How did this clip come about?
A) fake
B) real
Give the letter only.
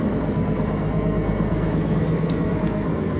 A